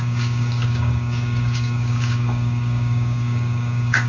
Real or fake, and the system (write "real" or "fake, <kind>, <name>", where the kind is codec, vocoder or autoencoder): fake, codec, DAC